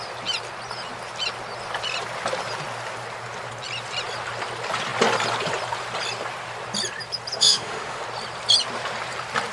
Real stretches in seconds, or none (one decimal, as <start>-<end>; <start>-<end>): 0.0-7.4; 8.0-9.5